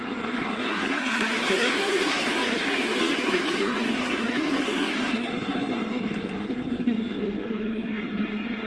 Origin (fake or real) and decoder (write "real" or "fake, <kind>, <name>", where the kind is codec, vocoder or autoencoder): fake, codec, SNAC